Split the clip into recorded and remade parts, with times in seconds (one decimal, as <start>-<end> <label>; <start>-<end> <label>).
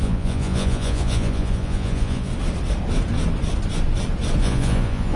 0.0-2.3 remade; 2.3-4.4 recorded; 4.4-5.2 remade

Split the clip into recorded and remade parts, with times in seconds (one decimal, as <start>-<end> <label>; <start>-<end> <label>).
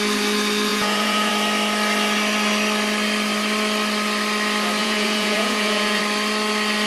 0.0-0.7 recorded; 0.7-1.3 remade; 1.3-4.8 recorded; 4.8-6.0 remade; 6.0-6.9 recorded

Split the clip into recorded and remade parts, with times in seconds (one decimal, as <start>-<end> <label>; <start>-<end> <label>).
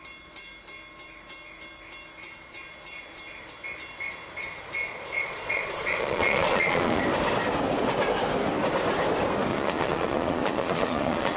0.0-4.9 recorded; 4.9-7.0 remade; 7.0-9.5 recorded; 9.5-11.4 remade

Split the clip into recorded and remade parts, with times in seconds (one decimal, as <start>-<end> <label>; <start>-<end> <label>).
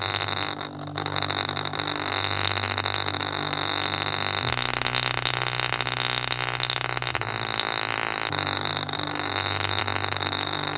0.0-10.8 recorded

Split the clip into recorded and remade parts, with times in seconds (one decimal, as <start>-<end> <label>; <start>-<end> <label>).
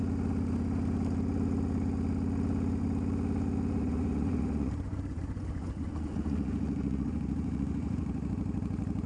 0.0-3.8 recorded; 3.8-8.3 remade; 8.3-9.1 recorded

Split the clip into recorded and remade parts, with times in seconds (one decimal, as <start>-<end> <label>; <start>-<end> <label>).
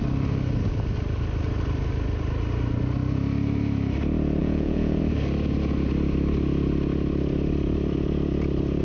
0.0-4.4 recorded; 4.4-5.0 remade; 5.0-8.8 recorded